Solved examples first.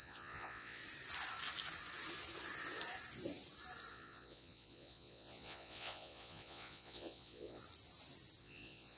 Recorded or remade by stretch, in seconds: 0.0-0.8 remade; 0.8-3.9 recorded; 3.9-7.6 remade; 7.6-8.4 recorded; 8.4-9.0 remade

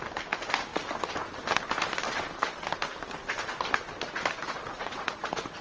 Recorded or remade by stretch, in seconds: 0.0-4.4 recorded; 4.4-5.6 remade

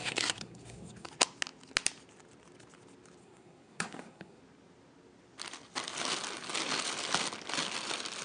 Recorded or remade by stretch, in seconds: 0.0-1.1 remade; 1.1-3.2 recorded; 3.2-4.4 remade; 4.4-8.2 recorded

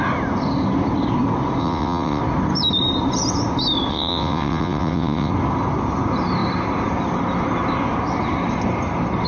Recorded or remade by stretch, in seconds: 0.0-1.6 recorded; 1.6-2.2 remade; 2.2-3.9 recorded; 3.9-5.3 remade; 5.3-9.3 recorded